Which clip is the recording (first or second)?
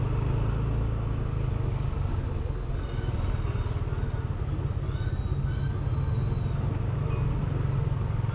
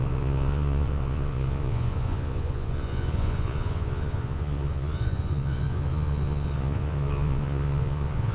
first